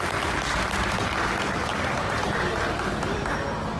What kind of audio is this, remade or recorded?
recorded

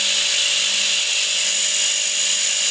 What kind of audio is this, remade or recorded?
recorded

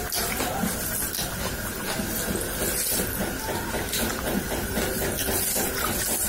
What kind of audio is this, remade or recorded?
recorded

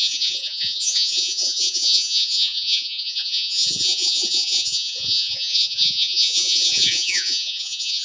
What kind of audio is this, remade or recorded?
remade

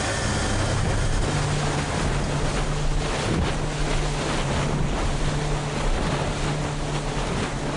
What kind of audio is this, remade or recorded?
recorded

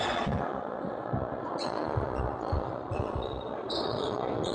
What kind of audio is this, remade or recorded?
remade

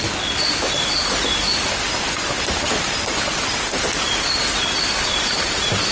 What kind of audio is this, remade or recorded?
remade